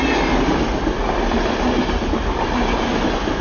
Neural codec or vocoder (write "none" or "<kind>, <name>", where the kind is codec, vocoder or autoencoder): none